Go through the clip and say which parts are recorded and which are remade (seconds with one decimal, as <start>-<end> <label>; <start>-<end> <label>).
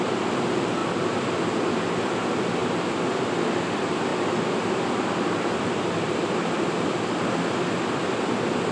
0.0-8.7 recorded